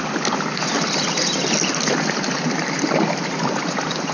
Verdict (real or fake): fake